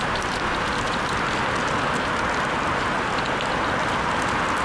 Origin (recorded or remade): recorded